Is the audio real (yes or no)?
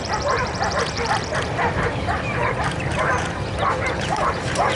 no